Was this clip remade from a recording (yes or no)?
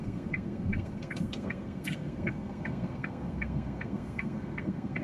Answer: yes